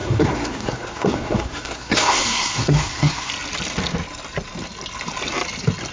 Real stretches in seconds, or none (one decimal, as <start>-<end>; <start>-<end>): 3.3-5.9